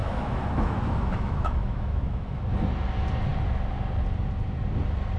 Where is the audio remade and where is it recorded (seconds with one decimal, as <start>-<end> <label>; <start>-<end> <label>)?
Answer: 0.0-2.4 remade; 2.4-5.2 recorded